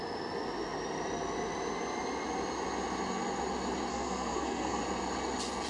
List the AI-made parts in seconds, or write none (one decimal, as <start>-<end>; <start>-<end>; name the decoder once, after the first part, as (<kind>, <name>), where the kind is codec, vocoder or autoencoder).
3.9-4.8 (codec, SNAC)